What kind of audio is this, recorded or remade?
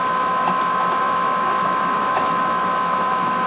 remade